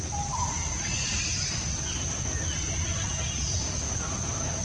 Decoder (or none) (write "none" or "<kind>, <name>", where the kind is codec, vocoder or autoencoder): none